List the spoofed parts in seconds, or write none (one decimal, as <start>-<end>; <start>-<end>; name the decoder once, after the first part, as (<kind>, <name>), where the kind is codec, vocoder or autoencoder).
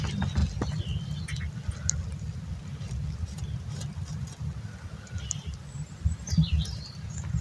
none